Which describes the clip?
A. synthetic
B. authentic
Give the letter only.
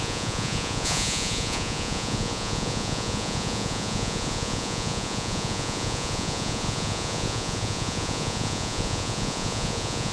A